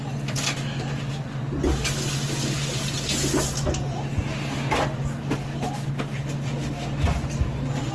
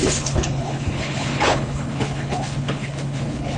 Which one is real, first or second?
first